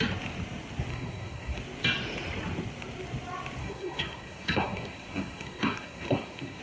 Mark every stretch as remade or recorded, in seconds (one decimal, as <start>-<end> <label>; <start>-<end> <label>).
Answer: 0.0-0.9 recorded; 0.9-1.6 remade; 1.6-3.6 recorded; 3.6-6.6 remade